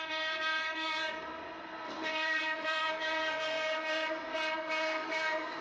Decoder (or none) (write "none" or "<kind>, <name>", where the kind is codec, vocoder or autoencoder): codec, SNAC